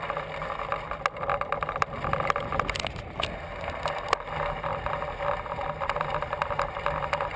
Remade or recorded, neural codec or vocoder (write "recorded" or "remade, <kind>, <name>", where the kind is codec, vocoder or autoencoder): recorded